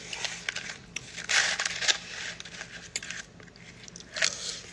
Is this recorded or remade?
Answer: recorded